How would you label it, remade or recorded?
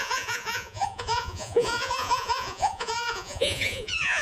remade